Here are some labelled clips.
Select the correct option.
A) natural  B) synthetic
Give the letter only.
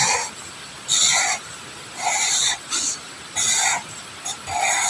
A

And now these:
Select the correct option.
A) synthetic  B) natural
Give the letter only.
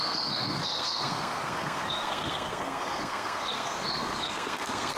A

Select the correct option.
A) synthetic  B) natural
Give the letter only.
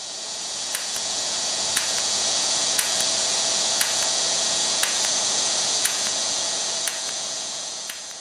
A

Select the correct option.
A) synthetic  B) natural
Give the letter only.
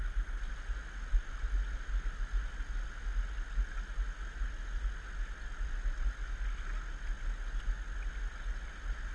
B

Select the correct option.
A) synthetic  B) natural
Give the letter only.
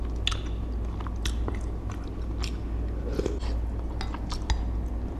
B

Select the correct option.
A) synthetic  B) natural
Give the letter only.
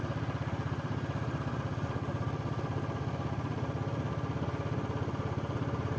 B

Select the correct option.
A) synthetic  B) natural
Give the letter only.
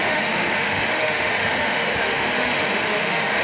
A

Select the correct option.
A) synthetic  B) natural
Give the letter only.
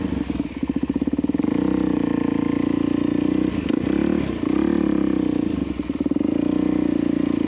B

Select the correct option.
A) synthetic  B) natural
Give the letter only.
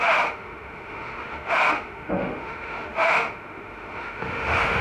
A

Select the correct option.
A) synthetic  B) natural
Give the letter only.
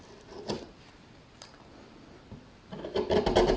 B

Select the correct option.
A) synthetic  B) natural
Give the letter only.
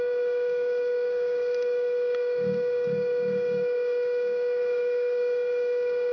A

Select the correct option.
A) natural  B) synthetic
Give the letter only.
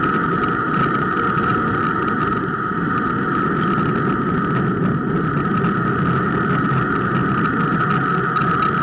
A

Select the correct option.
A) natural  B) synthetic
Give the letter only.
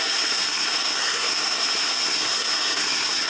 B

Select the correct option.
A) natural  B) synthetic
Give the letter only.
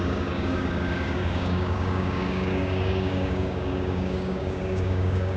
B